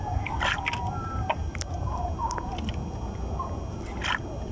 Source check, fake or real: real